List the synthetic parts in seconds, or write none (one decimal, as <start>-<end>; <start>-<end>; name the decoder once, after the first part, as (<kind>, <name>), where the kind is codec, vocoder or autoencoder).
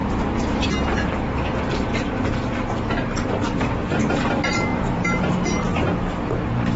none